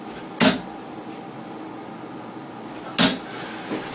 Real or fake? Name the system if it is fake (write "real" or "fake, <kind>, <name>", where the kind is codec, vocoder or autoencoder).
real